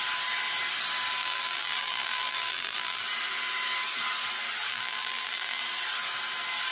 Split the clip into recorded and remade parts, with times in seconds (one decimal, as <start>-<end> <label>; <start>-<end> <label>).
0.0-1.2 recorded; 1.2-3.0 remade; 3.0-4.7 recorded; 4.7-5.6 remade; 5.6-6.7 recorded